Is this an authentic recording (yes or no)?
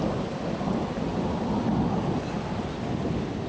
yes